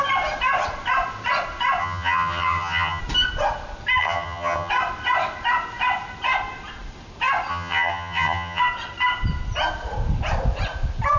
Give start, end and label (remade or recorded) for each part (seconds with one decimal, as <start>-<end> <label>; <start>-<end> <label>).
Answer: 0.0-1.8 recorded; 1.8-3.0 remade; 3.0-4.0 recorded; 4.0-4.7 remade; 4.7-7.5 recorded; 7.5-8.6 remade; 8.6-11.2 recorded